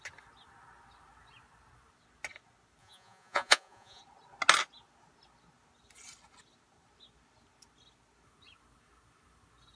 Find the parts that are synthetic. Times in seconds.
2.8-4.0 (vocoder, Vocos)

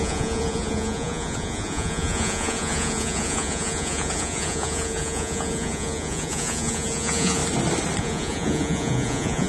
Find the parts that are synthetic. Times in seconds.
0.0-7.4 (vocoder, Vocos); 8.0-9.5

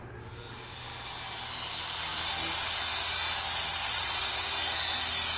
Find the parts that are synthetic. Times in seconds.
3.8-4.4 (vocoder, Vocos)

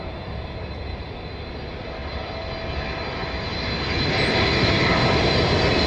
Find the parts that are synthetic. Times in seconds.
none

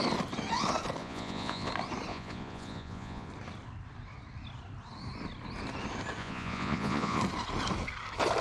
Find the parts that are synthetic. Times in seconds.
1.0-1.7 (vocoder, Vocos); 2.1-3.3; 6.2-7.2